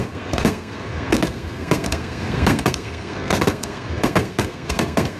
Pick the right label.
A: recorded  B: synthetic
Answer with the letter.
B